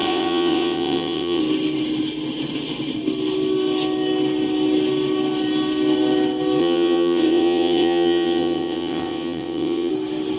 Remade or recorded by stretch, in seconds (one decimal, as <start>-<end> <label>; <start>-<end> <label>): 0.0-1.4 remade; 1.4-6.6 recorded; 6.6-9.9 remade; 9.9-10.4 recorded